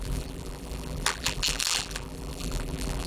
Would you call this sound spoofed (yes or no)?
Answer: yes